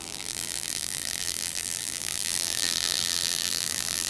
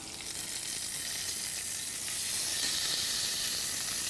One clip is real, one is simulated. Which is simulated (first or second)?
first